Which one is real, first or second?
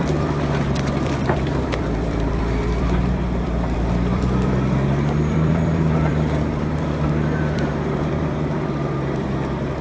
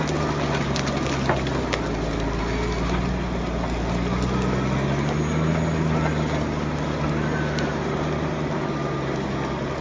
second